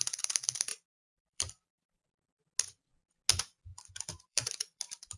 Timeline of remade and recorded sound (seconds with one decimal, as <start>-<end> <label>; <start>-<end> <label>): 0.0-0.7 recorded; 0.7-2.0 remade; 2.0-3.7 recorded; 3.7-5.2 remade

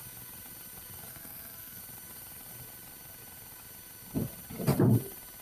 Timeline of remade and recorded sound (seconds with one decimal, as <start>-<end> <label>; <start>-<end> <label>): 0.0-1.1 recorded; 1.1-1.8 remade; 1.8-5.4 recorded

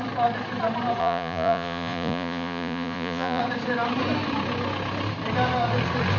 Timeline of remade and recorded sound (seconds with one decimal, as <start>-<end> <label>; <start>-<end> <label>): 0.0-1.0 recorded; 1.0-3.4 remade; 3.4-6.2 recorded

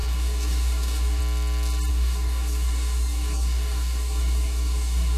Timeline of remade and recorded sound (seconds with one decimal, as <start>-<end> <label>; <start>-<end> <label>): 0.0-1.2 remade; 1.2-1.9 recorded; 1.9-5.2 remade

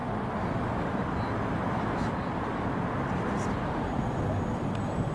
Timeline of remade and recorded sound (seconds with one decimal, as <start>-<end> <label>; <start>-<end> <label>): 0.0-5.1 recorded

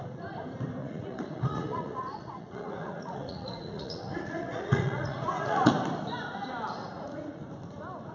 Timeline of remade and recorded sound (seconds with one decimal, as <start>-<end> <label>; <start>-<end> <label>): 0.0-0.8 recorded; 0.8-5.7 remade; 5.7-6.8 recorded; 6.8-7.4 remade; 7.4-8.1 recorded